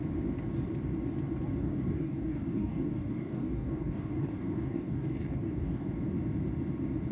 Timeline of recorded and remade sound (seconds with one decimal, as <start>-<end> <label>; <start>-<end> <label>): 0.0-1.6 recorded; 1.6-5.9 remade; 5.9-7.1 recorded